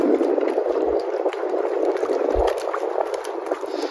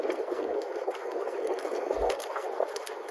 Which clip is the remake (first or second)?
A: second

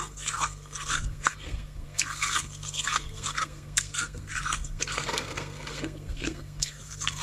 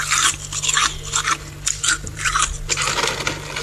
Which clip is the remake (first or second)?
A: first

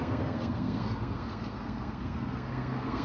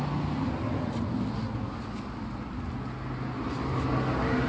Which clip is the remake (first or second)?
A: first